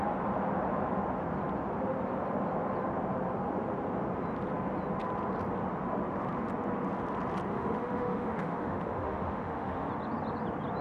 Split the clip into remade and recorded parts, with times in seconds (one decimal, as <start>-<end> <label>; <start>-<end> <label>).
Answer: 0.0-7.5 recorded; 7.5-9.9 remade; 9.9-10.8 recorded